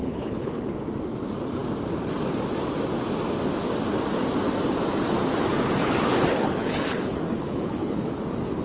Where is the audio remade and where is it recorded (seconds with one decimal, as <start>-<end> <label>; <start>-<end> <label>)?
0.0-0.6 remade; 0.6-5.8 recorded; 5.8-8.2 remade; 8.2-8.6 recorded